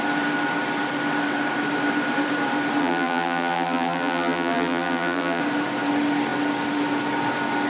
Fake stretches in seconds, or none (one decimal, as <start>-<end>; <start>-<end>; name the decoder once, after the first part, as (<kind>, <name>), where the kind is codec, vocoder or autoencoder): 2.8-5.4 (vocoder, BigVGAN v2)